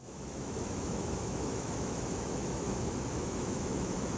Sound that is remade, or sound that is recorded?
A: remade